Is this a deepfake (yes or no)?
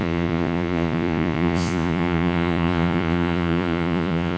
yes